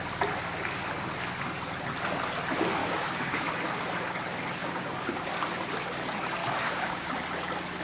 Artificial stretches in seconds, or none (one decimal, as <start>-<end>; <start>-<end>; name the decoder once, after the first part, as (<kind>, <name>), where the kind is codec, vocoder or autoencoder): 2.8-3.5 (codec, DAC); 4.6-5.3; 6.4-7.1